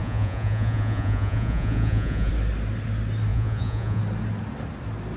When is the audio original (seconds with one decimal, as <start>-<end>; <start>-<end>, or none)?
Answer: 2.3-3.3; 4.0-5.2